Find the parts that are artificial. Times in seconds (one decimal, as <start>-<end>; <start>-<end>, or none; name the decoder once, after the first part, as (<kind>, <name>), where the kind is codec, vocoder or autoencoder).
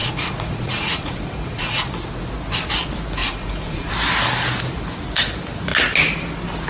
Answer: 0.0-1.8 (vocoder, Vocos); 3.2-3.9